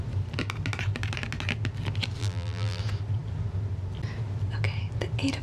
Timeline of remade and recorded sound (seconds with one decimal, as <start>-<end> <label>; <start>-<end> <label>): 0.0-2.2 recorded; 2.2-2.8 remade; 2.8-5.4 recorded